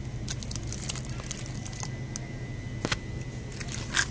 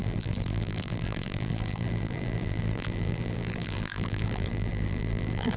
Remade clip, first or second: second